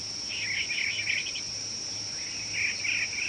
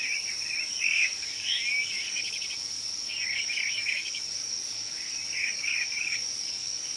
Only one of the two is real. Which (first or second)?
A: first